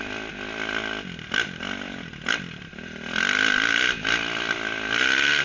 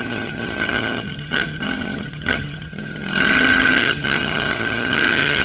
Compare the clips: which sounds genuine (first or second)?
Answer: first